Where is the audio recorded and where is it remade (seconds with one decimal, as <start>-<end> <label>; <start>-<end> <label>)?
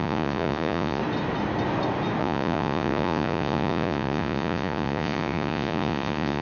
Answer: 0.0-1.0 remade; 1.0-2.2 recorded; 2.2-6.4 remade